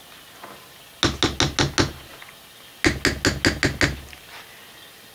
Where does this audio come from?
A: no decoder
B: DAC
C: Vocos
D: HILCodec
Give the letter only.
A